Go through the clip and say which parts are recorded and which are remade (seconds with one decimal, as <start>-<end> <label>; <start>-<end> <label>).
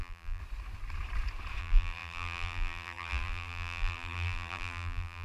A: 0.0-0.4 remade; 0.4-1.6 recorded; 1.6-5.2 remade